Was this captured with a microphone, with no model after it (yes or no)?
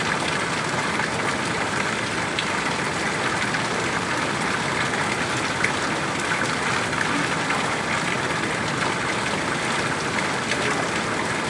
yes